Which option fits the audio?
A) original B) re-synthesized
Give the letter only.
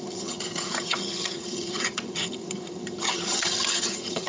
B